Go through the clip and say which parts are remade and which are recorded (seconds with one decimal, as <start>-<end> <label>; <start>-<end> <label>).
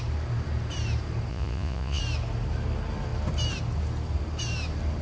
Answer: 0.0-1.3 recorded; 1.3-2.0 remade; 2.0-5.0 recorded